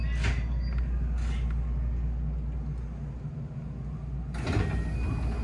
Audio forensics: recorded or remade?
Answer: recorded